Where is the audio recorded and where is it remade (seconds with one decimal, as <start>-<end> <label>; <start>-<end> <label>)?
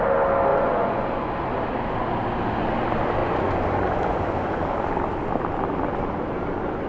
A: 0.0-0.5 recorded; 0.5-1.3 remade; 1.3-3.2 recorded; 3.2-4.6 remade; 4.6-6.9 recorded